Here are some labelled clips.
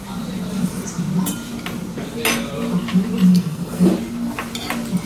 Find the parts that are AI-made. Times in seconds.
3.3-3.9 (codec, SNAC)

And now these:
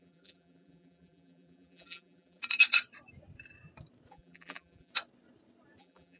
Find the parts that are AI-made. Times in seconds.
0.0-2.4 (vocoder, BigVGAN v2); 4.1-4.9; 5.8-6.2

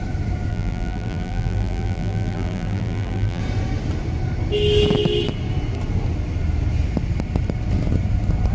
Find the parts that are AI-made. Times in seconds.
0.5-3.4 (vocoder, BigVGAN v2)

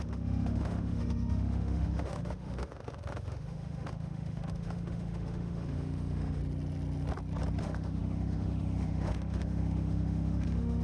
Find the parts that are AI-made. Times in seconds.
0.0-6.4 (autoencoder, DAC-VAE); 7.6-10.8

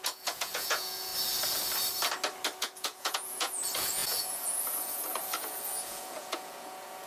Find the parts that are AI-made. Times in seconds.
0.0-1.1 (vocoder, Vocos); 2.6-7.1

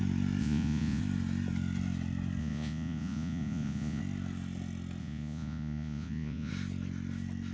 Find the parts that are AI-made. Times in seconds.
0.4-1.0 (vocoder, Vocos); 2.4-4.0; 5.0-6.5